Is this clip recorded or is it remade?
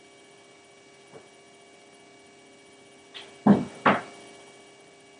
recorded